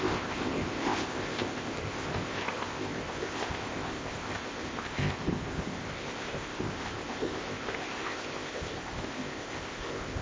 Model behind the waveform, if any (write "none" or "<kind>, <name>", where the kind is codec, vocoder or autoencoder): codec, ZipCodec